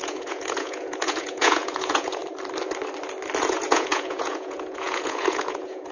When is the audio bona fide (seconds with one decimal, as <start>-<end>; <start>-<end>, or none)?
2.2-3.4